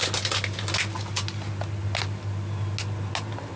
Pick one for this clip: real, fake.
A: real